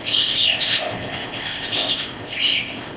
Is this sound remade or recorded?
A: remade